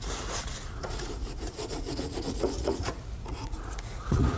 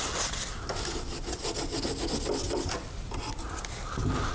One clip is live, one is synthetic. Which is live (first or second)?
second